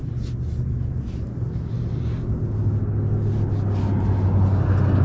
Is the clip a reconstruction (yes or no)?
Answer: no